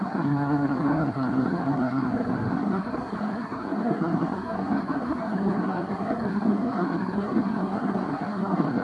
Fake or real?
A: fake